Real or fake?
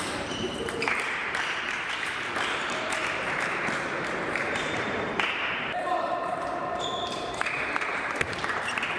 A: fake